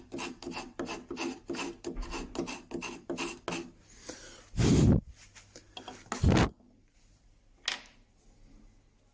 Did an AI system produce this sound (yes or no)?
no